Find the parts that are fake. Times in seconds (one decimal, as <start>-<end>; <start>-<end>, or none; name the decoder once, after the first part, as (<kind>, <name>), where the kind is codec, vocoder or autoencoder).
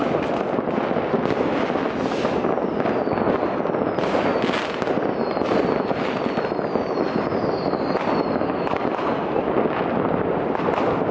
none